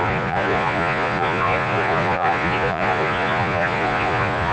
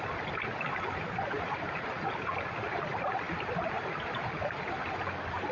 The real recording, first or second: second